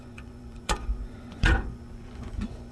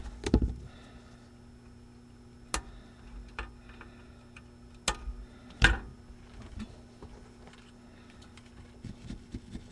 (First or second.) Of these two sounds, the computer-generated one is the first